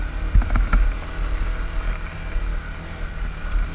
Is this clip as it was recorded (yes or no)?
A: yes